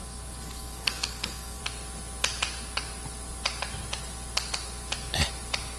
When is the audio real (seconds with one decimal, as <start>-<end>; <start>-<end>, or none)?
1.6-5.8